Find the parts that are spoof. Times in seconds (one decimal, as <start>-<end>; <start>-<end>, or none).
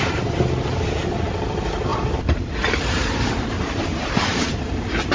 1.9-2.5; 3.9-5.1